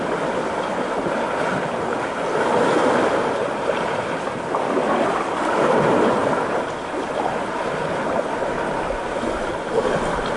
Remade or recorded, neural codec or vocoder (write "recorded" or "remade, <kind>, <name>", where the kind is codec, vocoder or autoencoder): recorded